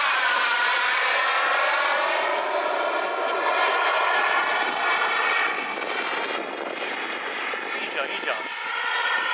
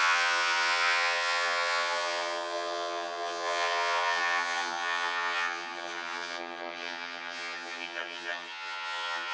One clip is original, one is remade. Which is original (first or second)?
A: first